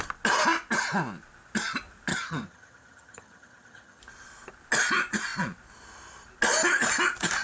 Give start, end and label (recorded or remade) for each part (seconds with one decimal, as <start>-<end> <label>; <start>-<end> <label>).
0.0-2.1 recorded; 2.1-4.0 remade; 4.0-7.4 recorded